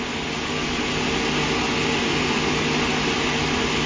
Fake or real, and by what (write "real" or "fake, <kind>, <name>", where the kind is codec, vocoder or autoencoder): real